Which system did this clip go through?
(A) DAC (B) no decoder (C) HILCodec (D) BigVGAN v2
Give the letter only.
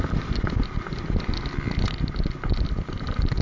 B